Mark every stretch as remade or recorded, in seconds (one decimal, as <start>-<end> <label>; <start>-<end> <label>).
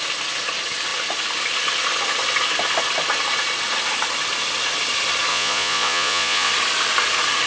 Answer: 0.0-5.3 recorded; 5.3-6.5 remade; 6.5-7.5 recorded